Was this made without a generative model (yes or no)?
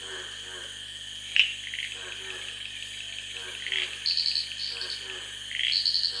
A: yes